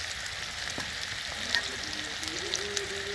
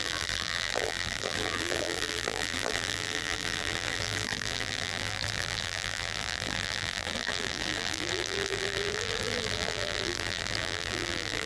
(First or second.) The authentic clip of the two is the first